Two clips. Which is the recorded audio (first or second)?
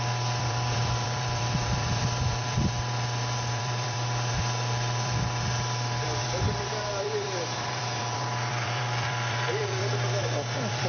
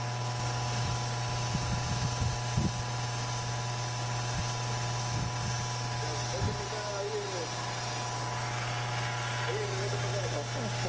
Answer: second